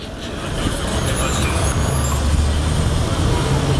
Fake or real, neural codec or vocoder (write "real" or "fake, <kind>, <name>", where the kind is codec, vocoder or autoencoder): real